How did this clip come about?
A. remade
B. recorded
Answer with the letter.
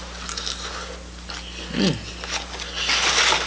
B